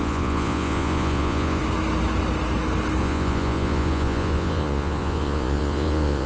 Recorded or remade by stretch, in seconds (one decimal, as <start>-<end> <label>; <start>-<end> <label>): 0.0-1.6 remade; 1.6-3.0 recorded; 3.0-6.3 remade